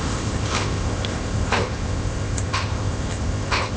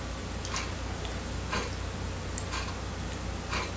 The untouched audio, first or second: second